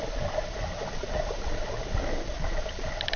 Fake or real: real